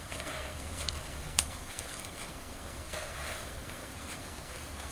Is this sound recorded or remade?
remade